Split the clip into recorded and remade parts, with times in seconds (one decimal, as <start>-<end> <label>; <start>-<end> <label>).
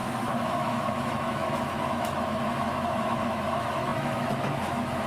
0.0-5.1 remade